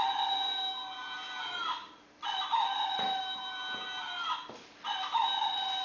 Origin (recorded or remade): recorded